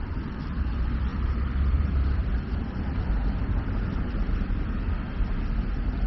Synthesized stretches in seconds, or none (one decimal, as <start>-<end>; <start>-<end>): 0.0-6.1